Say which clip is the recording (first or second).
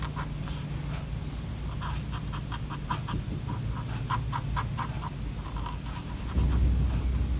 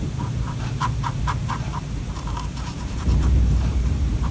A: first